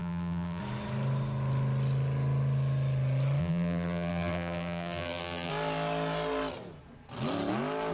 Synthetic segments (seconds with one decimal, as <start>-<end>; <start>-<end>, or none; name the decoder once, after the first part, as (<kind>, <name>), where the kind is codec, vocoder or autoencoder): 0.0-0.6 (vocoder, BigVGAN v2); 3.4-5.5